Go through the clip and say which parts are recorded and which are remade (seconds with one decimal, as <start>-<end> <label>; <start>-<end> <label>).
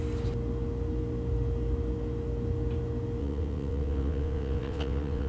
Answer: 0.0-3.2 recorded; 3.2-5.3 remade